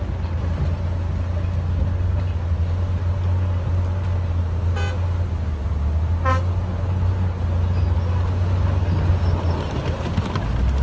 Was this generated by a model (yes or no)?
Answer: no